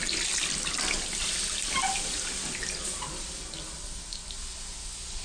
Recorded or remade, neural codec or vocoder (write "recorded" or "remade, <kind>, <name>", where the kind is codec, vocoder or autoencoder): recorded